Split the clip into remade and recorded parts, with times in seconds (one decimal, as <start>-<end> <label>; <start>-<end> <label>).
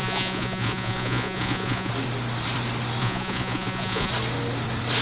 0.0-1.9 remade; 1.9-3.0 recorded; 3.0-4.1 remade; 4.1-5.0 recorded